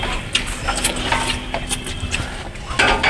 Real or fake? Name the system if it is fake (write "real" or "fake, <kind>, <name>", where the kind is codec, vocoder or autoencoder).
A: real